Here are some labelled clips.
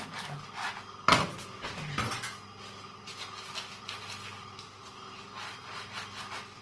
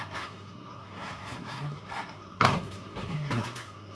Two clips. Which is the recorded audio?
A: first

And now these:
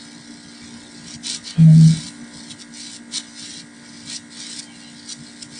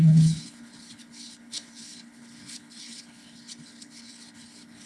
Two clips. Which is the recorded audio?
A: first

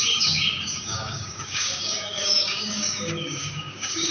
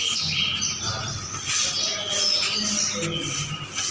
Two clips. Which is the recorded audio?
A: second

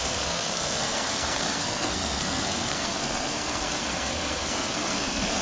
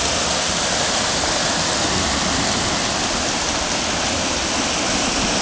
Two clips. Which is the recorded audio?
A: second